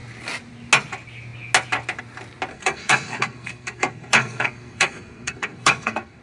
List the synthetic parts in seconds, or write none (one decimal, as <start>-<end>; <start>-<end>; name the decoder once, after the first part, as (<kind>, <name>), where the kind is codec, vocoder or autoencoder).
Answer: 2.5-6.2 (codec, SNAC)